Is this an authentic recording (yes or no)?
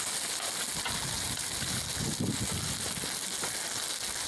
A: yes